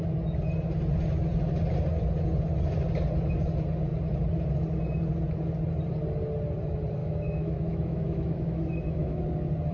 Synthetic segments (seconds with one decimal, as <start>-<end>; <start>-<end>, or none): 7.0-9.2